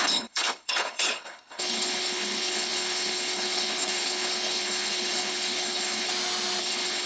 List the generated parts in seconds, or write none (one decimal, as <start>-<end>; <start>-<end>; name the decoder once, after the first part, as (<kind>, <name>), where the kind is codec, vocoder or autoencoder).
0.0-6.1 (codec, HILCodec); 6.6-7.1